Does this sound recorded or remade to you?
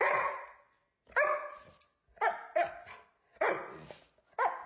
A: recorded